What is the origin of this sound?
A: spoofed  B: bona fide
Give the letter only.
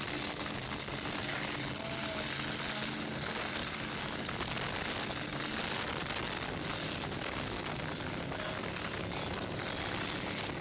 B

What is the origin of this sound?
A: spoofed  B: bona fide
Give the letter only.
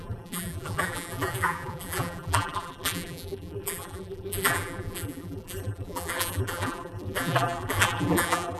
A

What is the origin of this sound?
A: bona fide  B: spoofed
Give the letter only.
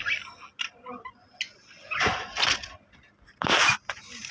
A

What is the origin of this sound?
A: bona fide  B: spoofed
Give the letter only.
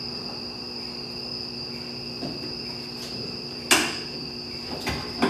A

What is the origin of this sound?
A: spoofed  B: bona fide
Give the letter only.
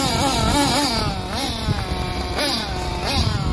B